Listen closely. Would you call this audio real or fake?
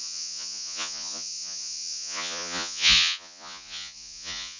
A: fake